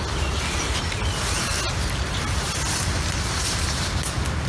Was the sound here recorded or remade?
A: recorded